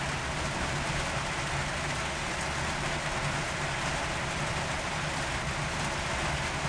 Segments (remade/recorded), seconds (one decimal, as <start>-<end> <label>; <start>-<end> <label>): 0.0-6.7 recorded